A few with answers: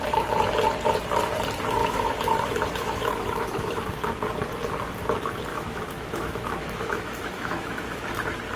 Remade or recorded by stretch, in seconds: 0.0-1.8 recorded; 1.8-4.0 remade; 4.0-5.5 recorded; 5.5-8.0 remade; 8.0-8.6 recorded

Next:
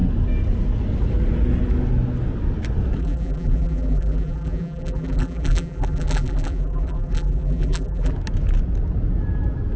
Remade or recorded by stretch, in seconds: 0.0-3.0 recorded; 3.0-8.1 remade; 8.1-9.8 recorded

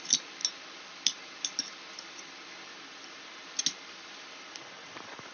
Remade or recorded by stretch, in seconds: 0.0-5.3 recorded

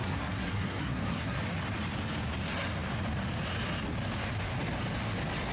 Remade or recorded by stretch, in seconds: 0.0-1.4 remade; 1.4-5.5 recorded

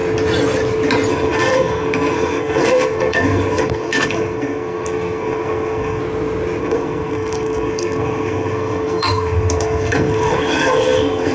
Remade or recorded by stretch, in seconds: 0.0-1.1 recorded; 1.1-6.0 remade; 6.0-6.6 recorded; 6.6-11.3 remade